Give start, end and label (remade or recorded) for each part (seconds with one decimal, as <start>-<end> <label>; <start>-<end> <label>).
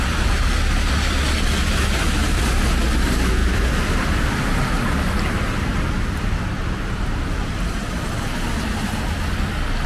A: 0.0-3.4 recorded; 3.4-3.9 remade; 3.9-9.9 recorded